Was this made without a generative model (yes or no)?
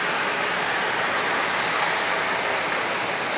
yes